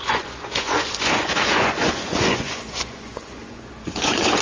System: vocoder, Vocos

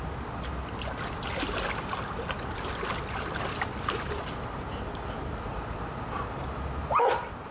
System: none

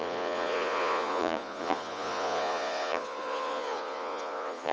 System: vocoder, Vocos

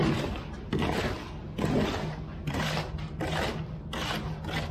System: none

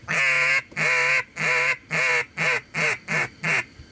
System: none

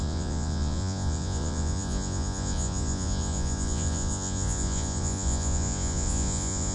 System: vocoder, Vocos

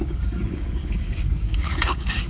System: codec, DAC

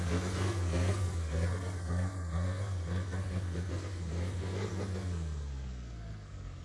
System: codec, SNAC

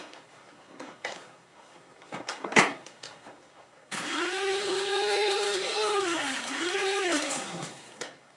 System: codec, SNAC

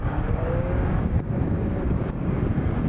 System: codec, DAC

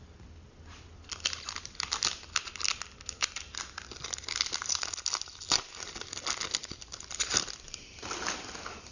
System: none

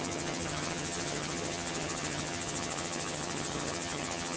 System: vocoder, HiFi-GAN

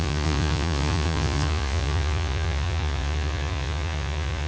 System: vocoder, Vocos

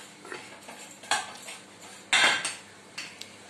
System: none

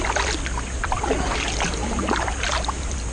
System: none